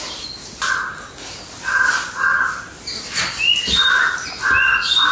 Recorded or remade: recorded